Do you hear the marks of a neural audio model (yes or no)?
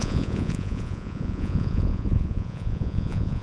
yes